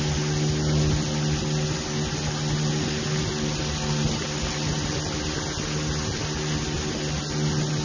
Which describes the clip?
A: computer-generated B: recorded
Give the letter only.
B